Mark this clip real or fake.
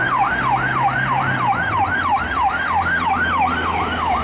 real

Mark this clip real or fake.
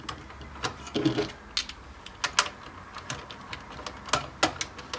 real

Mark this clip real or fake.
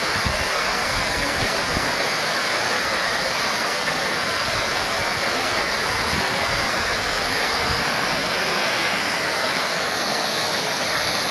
fake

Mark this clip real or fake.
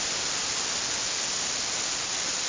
real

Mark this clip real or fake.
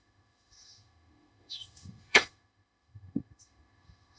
fake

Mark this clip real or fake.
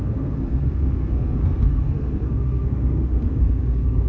fake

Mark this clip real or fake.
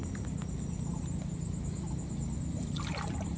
real